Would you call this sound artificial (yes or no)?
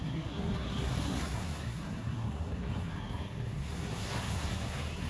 yes